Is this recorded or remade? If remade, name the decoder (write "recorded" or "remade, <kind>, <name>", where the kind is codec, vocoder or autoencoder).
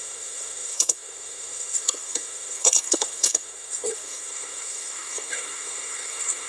remade, codec, SNAC